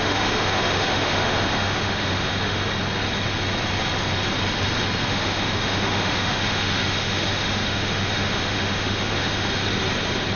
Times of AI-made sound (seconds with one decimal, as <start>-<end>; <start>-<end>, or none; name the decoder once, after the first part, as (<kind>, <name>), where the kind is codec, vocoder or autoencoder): 0.0-2.6 (autoencoder, DAC-VAE); 5.1-9.6